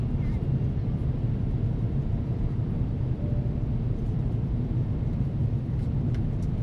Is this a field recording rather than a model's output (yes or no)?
no